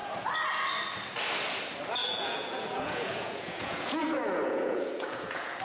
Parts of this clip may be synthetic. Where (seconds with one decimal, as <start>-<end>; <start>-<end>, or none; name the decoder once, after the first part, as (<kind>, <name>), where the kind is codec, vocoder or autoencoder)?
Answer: 2.0-5.6 (vocoder, Vocos)

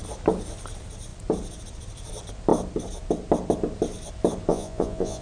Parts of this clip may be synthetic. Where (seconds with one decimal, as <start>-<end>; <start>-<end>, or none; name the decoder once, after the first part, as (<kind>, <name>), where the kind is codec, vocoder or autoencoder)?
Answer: 4.5-5.2 (vocoder, Vocos)